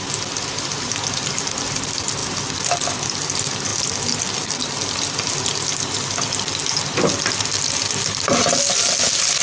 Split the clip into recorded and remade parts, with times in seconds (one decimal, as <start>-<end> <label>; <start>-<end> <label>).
0.0-9.4 recorded